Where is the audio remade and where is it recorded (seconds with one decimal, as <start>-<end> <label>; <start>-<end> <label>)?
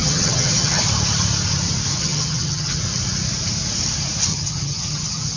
0.0-0.8 remade; 0.8-1.9 recorded; 1.9-2.8 remade; 2.8-4.3 recorded; 4.3-5.4 remade